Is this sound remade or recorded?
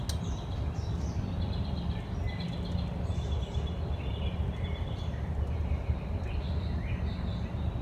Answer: recorded